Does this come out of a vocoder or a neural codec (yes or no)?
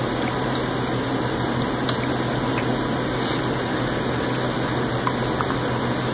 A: no